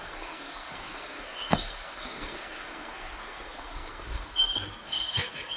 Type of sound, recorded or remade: remade